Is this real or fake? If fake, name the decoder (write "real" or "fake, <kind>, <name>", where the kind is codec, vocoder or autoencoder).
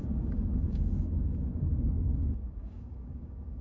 fake, codec, DAC